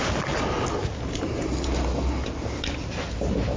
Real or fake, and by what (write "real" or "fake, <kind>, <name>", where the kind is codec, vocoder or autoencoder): real